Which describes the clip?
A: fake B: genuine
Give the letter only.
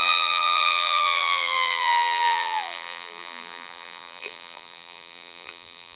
A